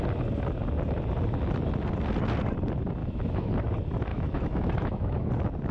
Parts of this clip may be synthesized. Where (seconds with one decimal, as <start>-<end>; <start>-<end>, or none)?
3.0-3.5; 4.1-5.3